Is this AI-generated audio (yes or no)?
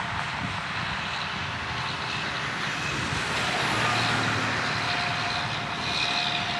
no